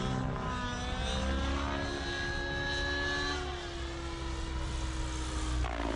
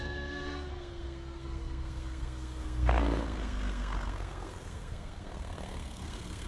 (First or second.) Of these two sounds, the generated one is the second